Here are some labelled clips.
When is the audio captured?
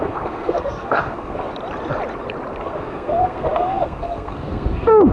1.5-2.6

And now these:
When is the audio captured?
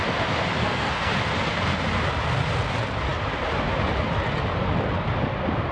0.0-0.6; 1.1-5.7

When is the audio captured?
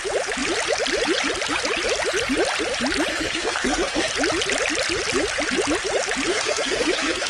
0.0-3.1; 4.1-6.3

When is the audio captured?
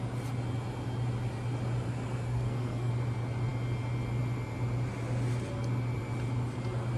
0.0-2.3; 2.9-7.0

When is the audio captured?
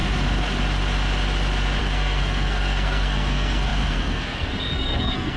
0.0-1.8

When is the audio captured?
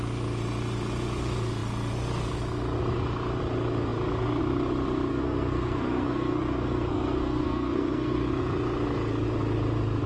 0.0-5.1; 8.3-10.1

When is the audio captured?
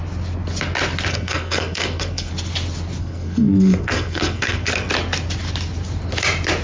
0.0-1.1; 2.3-3.0; 4.9-6.6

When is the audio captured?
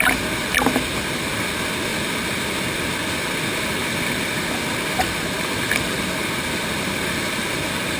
0.0-8.0